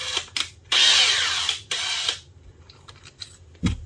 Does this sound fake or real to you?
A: real